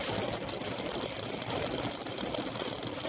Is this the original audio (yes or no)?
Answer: yes